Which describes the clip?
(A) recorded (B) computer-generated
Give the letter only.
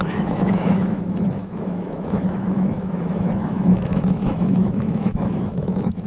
B